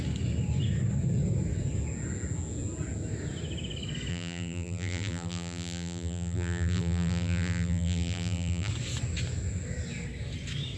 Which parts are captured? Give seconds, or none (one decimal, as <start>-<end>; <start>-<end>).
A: 0.0-4.1; 8.7-10.8